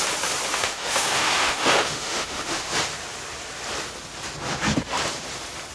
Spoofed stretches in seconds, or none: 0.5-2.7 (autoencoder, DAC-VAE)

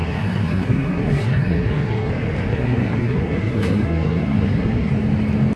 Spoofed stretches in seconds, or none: 0.0-2.1 (codec, SNAC); 2.5-4.9

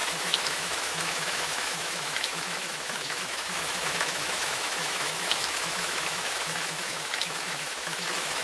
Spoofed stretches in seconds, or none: 0.0-8.4 (autoencoder, DAC-VAE)

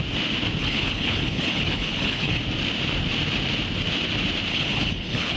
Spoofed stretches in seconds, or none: 0.6-2.4 (codec, HILCodec); 4.5-5.4

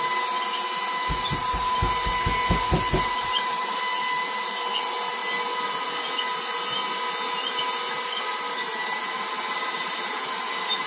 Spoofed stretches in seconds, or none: 2.9-3.8 (vocoder, BigVGAN v2)